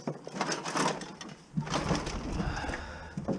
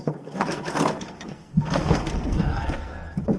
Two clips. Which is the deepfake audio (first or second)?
second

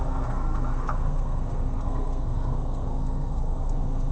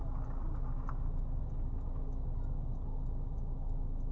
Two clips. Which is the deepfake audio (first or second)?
first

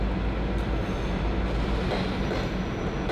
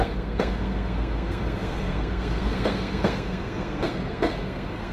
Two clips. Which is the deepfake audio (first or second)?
second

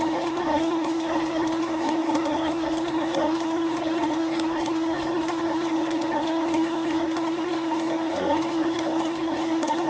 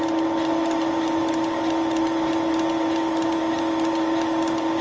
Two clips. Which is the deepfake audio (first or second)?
first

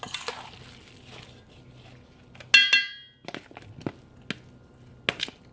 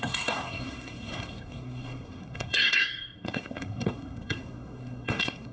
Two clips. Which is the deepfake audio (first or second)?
second